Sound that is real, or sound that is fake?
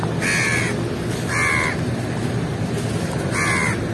real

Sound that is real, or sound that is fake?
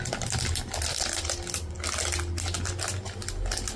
real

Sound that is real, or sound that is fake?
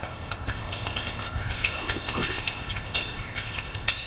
fake